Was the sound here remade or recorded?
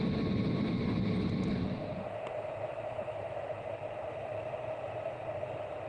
recorded